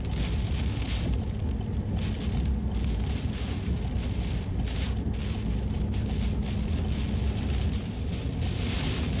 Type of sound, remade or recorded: recorded